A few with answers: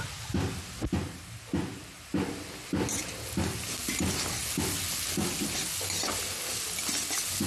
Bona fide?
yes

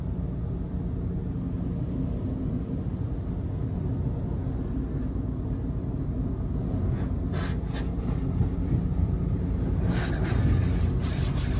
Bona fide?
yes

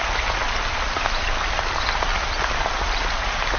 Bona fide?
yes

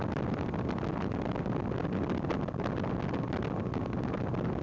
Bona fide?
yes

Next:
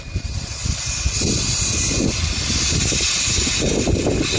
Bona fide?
yes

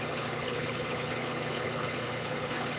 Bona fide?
no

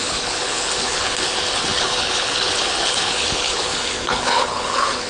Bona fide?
no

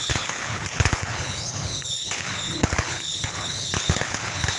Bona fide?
no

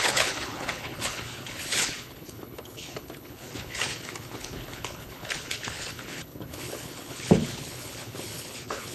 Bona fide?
no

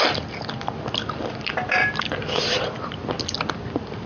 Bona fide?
yes